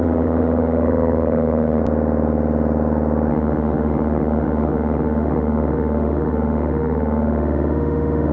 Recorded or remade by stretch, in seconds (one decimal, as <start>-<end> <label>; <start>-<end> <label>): 0.0-1.8 remade; 1.8-3.3 recorded; 3.3-8.3 remade

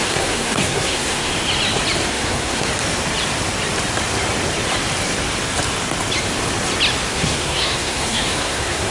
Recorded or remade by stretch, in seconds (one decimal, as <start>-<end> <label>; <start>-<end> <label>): 0.0-1.3 remade; 1.3-2.1 recorded; 2.1-2.7 remade; 2.7-7.1 recorded; 7.1-8.9 remade